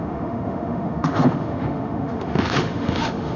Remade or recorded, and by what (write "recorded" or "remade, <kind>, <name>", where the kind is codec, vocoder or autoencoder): remade, autoencoder, DAC-VAE